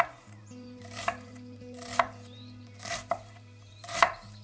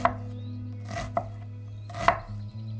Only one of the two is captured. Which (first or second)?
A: second